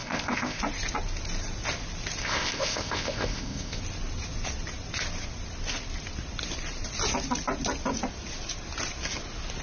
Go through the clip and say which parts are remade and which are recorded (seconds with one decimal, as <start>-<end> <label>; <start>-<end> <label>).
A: 0.0-0.6 remade; 0.6-2.2 recorded; 2.2-3.8 remade; 3.8-9.6 recorded